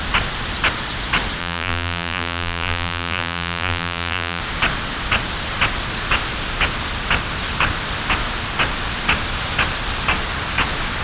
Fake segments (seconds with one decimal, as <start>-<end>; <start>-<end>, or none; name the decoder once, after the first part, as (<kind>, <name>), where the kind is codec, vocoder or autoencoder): 1.4-4.4 (vocoder, BigVGAN v2)

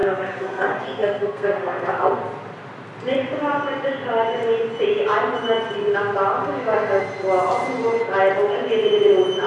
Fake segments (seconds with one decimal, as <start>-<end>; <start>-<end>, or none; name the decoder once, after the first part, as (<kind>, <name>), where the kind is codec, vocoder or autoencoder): 0.0-2.2 (codec, SNAC); 6.4-7.0

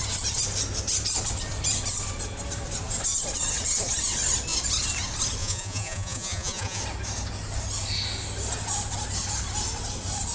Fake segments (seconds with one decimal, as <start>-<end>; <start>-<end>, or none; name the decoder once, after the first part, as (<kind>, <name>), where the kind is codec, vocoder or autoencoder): 5.4-6.8 (vocoder, Vocos)

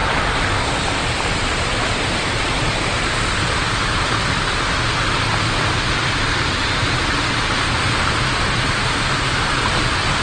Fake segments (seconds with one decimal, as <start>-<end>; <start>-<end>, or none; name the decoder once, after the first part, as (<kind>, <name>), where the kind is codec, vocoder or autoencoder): none

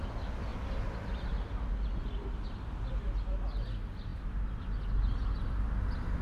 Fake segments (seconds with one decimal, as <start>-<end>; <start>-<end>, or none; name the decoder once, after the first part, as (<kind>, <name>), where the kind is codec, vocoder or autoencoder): none

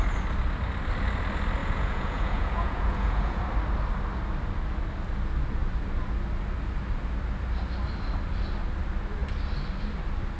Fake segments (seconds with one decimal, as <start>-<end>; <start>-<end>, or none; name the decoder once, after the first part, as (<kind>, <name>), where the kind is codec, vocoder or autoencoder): 1.6-3.4 (vocoder, Vocos)

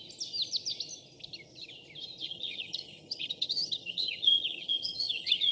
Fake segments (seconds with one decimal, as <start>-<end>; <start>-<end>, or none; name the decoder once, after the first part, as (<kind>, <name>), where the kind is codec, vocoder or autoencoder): 2.2-5.5 (vocoder, HiFi-GAN)